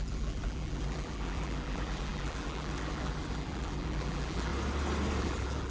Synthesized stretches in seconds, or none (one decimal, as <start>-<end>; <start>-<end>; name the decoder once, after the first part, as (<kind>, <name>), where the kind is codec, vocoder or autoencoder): 0.0-4.5 (vocoder, BigVGAN v2); 5.2-5.7